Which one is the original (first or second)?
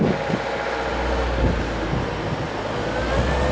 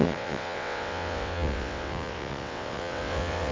first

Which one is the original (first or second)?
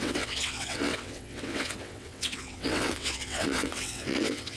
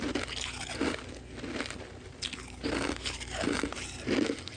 second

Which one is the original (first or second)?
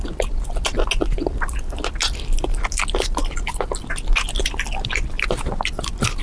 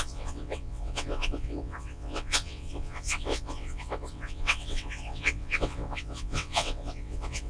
first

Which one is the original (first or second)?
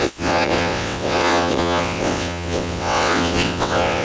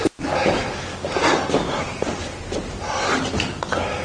second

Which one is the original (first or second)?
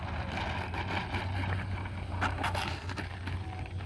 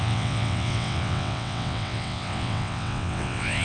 first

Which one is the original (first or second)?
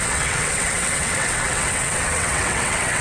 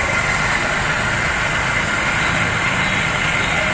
second